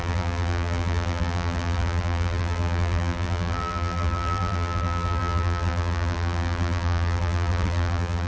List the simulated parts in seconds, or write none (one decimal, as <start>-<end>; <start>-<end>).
0.0-8.3